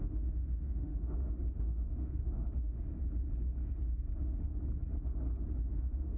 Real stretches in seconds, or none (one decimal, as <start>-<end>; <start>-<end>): 2.9-4.1; 4.5-5.7